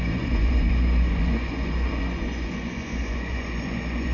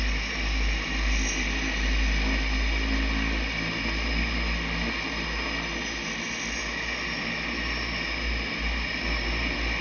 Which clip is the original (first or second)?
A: second